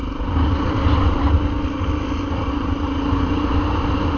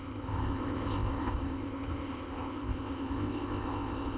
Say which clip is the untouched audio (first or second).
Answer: first